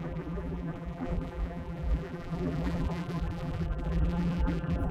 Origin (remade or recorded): remade